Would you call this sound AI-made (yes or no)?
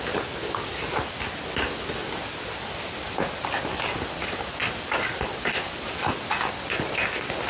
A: no